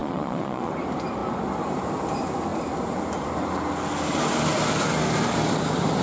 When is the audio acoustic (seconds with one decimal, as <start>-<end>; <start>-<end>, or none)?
0.7-6.0